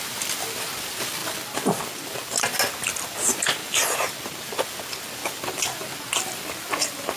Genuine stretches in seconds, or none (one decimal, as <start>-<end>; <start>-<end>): 0.0-7.2